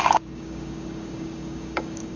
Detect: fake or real fake